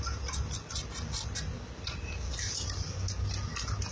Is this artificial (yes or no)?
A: no